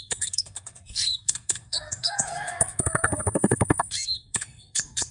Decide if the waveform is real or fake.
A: fake